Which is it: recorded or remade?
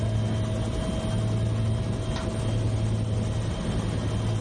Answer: recorded